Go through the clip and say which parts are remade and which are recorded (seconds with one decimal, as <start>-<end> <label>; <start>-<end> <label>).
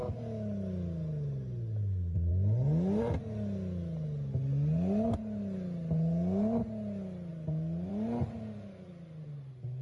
0.0-9.8 recorded